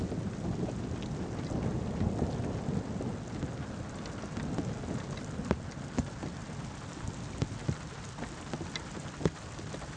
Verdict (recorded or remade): recorded